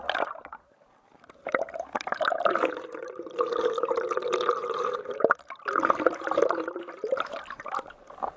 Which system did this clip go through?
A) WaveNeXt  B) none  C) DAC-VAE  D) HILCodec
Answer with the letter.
B